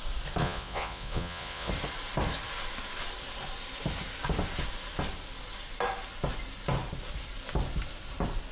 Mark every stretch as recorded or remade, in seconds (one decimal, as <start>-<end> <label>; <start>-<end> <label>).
0.0-0.4 recorded; 0.4-1.7 remade; 1.7-8.5 recorded